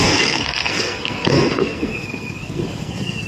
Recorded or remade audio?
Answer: remade